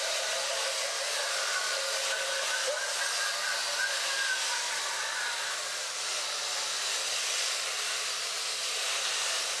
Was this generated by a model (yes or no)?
no